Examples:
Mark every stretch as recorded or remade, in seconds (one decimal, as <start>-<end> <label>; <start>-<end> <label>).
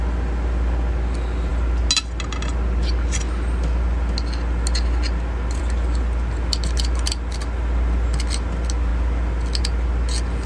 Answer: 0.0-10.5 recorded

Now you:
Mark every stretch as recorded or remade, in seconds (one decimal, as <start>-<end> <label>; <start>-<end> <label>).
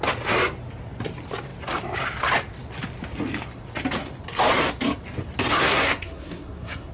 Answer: 0.0-5.6 recorded; 5.6-6.9 remade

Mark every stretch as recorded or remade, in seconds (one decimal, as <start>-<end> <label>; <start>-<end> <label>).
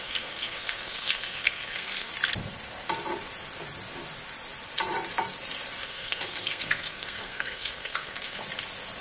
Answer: 0.0-2.1 remade; 2.1-5.8 recorded; 5.8-8.4 remade; 8.4-9.0 recorded